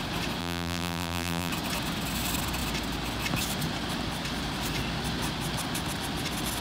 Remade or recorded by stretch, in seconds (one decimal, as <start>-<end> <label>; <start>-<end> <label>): 0.0-0.4 recorded; 0.4-1.5 remade; 1.5-6.6 recorded